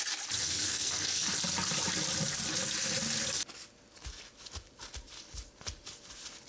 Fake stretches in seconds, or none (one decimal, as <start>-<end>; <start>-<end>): 0.4-1.3